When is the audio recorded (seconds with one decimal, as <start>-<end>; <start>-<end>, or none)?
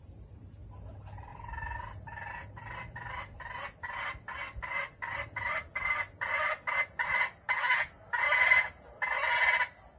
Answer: 0.0-10.0